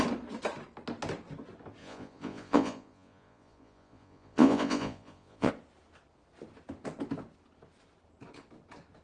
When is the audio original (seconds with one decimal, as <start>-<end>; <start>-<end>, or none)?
0.0-1.8; 5.5-9.0